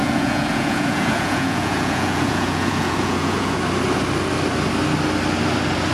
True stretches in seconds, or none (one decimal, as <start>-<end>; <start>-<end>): 3.5-5.9